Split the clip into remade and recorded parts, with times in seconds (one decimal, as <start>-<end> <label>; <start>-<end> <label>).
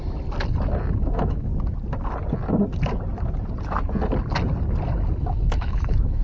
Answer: 0.0-1.0 recorded; 1.0-1.5 remade; 1.5-5.2 recorded; 5.2-6.2 remade